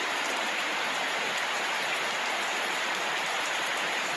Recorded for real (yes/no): no